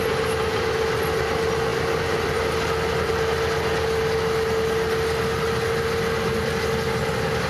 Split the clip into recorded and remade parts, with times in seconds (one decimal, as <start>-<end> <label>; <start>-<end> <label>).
0.0-7.5 recorded